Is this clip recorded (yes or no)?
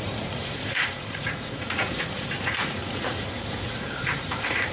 no